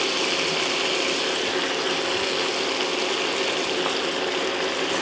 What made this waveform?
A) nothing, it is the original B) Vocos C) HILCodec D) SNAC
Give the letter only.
A